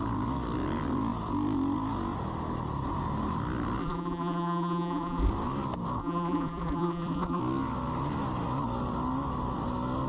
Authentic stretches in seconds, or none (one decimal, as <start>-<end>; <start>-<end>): 0.0-3.8; 5.3-6.0; 7.4-10.1

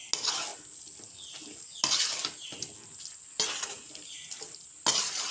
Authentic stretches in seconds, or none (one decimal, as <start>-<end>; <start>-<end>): 0.0-5.3

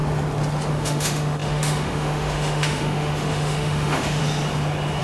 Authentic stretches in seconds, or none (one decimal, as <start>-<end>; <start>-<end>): 0.0-0.7; 4.2-5.0

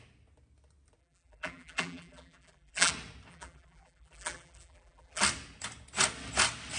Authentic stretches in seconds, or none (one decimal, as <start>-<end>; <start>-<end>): 0.0-1.0; 2.9-3.3; 5.2-6.8